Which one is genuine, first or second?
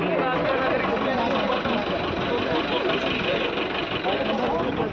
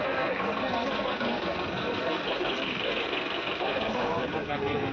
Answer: first